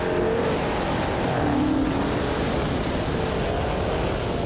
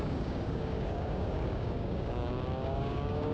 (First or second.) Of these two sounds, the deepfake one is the second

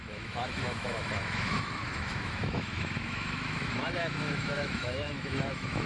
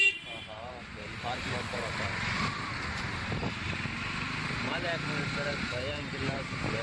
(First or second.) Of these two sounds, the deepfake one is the first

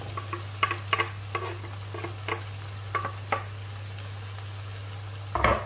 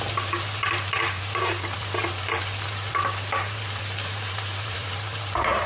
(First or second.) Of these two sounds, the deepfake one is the second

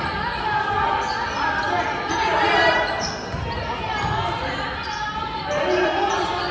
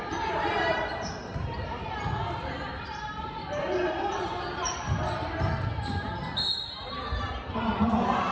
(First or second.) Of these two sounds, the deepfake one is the second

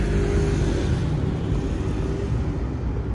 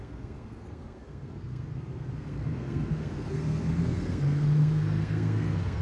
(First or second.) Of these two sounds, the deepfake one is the second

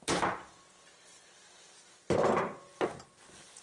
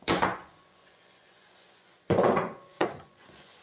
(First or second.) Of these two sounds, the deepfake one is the second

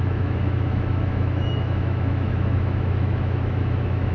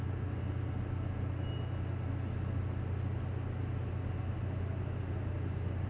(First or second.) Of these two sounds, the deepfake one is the first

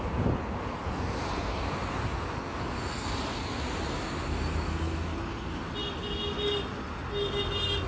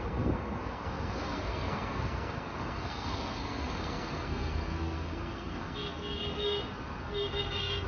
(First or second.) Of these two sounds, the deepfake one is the second